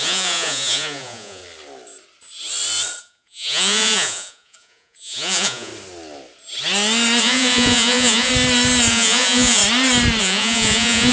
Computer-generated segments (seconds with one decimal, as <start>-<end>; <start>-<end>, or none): 0.0-1.4; 3.0-5.7; 7.2-8.3; 8.9-9.6; 10.2-11.1